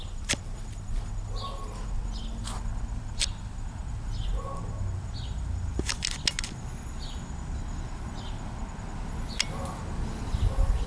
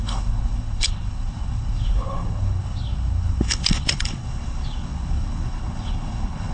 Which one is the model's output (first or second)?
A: second